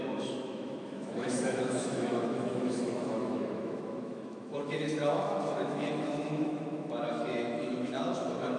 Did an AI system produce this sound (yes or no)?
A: yes